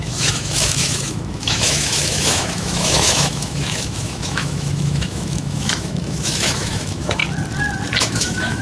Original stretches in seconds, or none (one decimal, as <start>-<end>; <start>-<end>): 7.2-8.0